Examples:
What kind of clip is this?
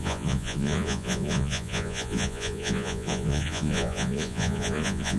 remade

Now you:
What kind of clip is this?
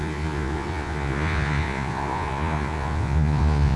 remade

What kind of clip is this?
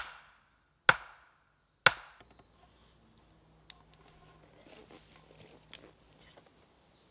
recorded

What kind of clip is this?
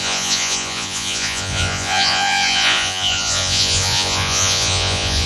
remade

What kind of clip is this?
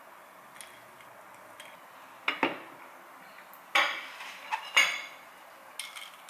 recorded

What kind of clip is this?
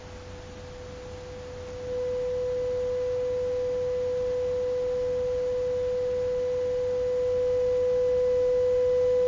recorded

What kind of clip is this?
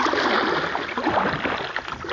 recorded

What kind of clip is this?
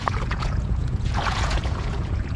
remade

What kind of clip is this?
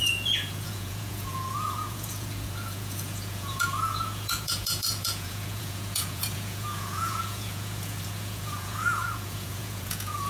remade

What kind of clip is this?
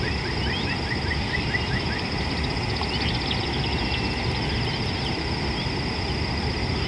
recorded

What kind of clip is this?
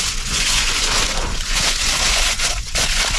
remade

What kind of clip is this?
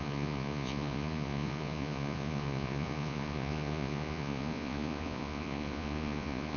remade